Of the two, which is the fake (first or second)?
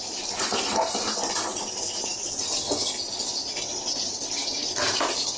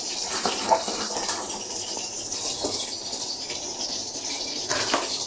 second